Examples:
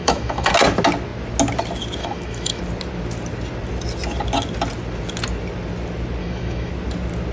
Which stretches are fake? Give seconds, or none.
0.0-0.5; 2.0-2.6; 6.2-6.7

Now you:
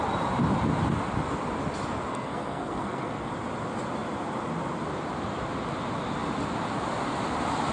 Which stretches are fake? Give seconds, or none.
2.1-3.3